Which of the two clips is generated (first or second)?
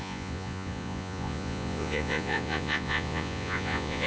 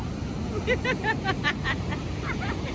first